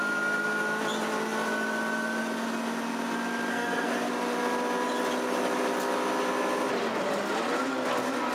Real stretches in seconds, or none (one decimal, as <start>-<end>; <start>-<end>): 0.0-3.5; 4.1-8.3